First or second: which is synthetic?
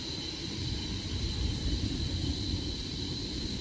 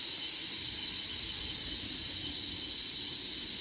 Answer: first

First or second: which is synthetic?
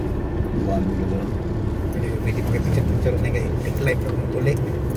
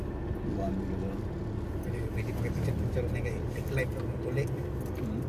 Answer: first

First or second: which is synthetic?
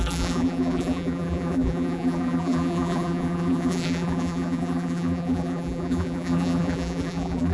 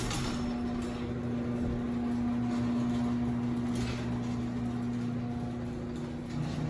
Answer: first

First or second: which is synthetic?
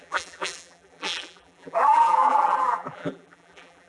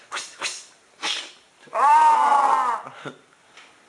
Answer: first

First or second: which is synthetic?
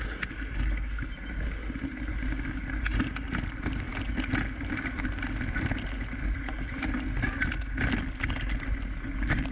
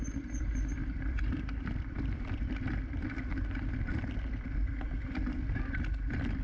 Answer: second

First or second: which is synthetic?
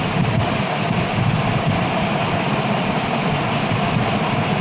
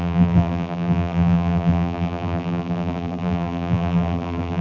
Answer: second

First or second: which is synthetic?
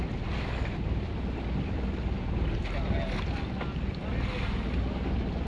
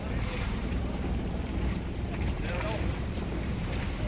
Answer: second